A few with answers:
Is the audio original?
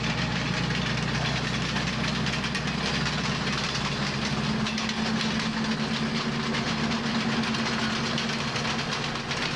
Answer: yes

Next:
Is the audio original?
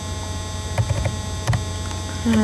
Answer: yes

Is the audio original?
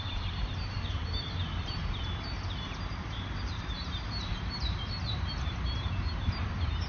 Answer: no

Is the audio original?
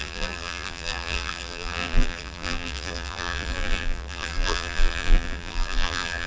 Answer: no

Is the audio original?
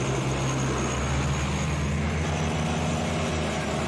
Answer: yes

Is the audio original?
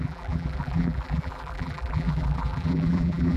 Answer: no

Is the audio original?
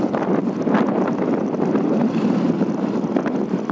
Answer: yes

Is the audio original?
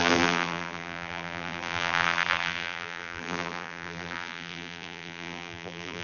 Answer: no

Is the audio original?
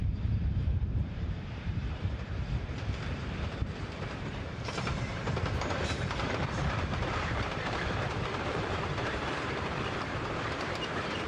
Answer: no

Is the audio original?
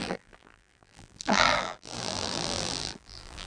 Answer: no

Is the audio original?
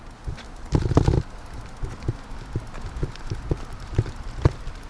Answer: yes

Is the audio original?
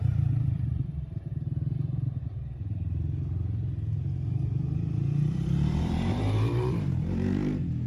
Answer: no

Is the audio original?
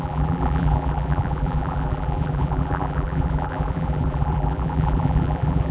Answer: no